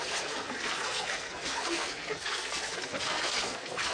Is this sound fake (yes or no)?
yes